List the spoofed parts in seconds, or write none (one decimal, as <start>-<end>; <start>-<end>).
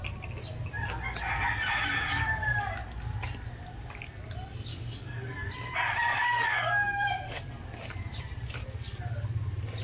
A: 4.7-5.5; 6.1-7.5